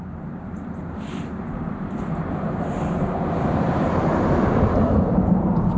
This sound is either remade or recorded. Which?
remade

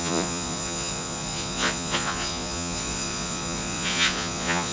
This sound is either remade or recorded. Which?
remade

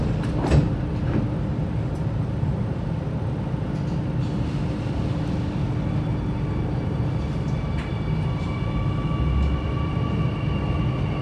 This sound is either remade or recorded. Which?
recorded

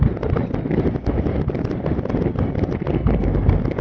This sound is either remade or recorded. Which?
recorded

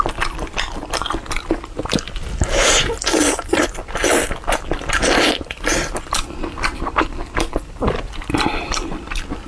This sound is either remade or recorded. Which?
recorded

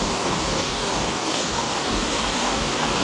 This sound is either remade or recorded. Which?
remade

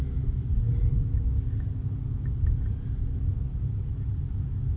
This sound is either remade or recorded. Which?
recorded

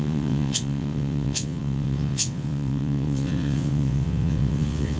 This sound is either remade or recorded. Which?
remade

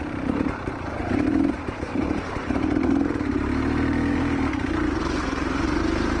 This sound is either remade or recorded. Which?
remade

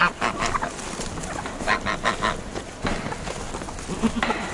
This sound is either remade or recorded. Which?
recorded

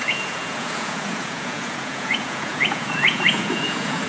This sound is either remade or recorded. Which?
remade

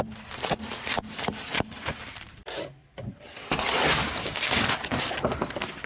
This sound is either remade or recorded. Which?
remade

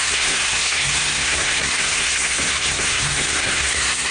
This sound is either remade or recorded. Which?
remade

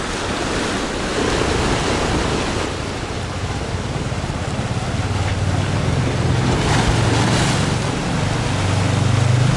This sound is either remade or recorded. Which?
recorded